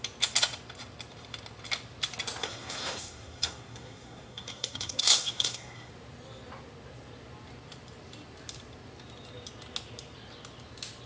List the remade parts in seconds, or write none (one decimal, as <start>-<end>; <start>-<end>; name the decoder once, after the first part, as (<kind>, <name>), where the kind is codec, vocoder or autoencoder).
2.4-5.9 (codec, SNAC)